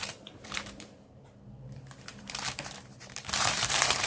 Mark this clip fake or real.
fake